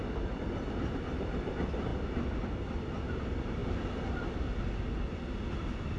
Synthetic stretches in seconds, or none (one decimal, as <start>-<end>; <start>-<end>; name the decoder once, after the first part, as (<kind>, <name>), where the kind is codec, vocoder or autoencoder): none